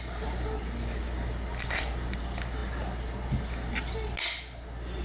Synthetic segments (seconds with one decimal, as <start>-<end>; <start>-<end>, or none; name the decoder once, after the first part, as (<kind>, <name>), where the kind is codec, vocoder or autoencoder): none